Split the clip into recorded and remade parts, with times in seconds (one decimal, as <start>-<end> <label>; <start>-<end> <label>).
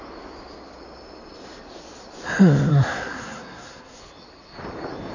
0.0-2.7 recorded; 2.7-4.0 remade; 4.0-5.1 recorded